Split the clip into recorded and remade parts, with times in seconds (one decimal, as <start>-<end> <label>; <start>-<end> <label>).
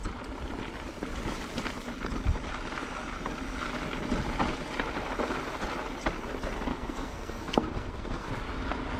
0.0-6.7 recorded; 6.7-8.3 remade; 8.3-9.0 recorded